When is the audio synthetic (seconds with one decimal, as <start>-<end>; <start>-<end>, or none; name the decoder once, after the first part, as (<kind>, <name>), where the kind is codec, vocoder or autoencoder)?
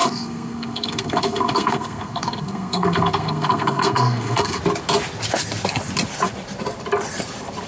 0.0-4.6 (codec, SNAC)